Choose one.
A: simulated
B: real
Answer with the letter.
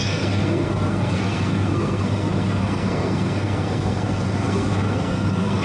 A